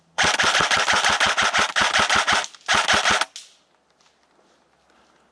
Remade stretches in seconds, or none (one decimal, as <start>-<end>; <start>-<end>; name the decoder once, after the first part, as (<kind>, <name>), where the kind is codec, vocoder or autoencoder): none